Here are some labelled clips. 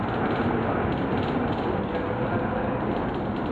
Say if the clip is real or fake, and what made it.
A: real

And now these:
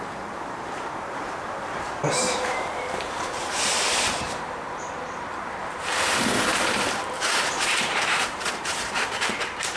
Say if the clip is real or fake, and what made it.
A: fake, vocoder, BigVGAN v2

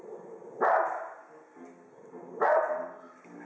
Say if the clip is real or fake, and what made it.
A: real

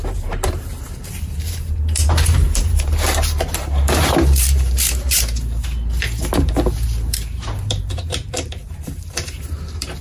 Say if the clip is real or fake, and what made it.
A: fake, vocoder, BigVGAN v2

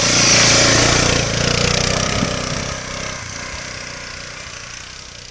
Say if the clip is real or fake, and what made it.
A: real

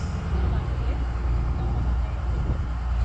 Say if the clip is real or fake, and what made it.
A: real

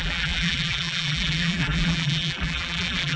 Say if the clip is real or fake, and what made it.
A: fake, vocoder, BigVGAN v2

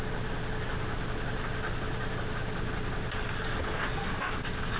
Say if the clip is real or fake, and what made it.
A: real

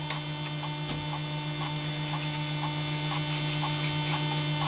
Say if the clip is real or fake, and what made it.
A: real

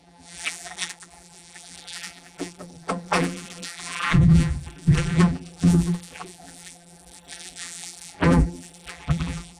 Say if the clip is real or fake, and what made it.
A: fake, vocoder, BigVGAN v2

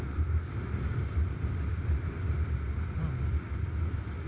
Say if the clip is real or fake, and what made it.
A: real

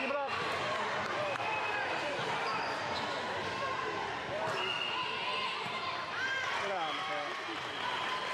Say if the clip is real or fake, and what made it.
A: fake, vocoder, BigVGAN v2